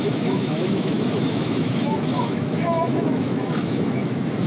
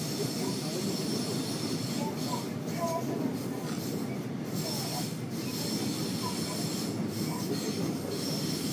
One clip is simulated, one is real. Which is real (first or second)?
second